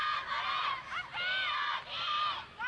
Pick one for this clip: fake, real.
real